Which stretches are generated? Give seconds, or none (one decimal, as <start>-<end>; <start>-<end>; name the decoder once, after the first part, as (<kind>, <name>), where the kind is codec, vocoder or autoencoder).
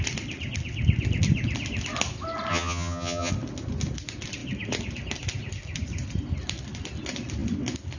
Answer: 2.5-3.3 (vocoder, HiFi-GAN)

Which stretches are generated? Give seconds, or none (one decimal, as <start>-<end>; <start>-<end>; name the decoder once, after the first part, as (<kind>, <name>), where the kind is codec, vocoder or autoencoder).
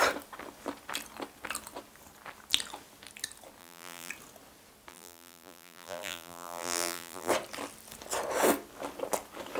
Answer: 3.6-4.1 (vocoder, BigVGAN v2); 4.9-7.3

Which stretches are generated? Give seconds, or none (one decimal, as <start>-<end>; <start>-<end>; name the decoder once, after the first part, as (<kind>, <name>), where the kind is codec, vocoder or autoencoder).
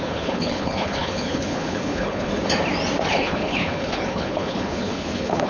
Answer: 0.0-2.3 (codec, HILCodec); 3.1-5.5